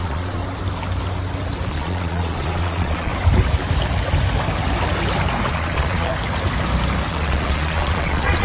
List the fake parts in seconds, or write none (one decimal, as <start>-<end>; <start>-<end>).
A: 0.0-0.4; 1.7-3.1; 5.5-6.1; 7.1-8.4